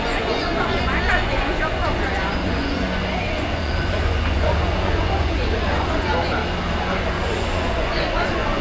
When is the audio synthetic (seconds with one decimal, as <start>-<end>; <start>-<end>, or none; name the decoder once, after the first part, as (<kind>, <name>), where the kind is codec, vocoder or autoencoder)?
0.0-6.1 (vocoder, Vocos); 6.8-8.6